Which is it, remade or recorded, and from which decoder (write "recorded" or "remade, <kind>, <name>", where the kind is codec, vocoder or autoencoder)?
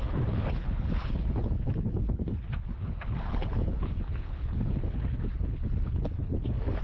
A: remade, codec, HILCodec